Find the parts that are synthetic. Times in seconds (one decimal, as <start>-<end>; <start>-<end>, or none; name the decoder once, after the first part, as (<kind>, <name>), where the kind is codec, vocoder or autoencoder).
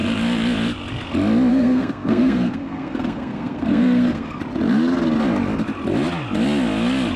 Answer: 1.5-4.4 (codec, SNAC)